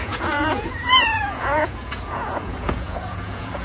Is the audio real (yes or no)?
no